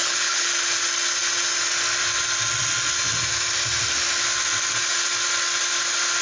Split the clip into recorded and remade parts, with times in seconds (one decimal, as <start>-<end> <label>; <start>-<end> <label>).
0.0-0.5 remade; 0.5-6.2 recorded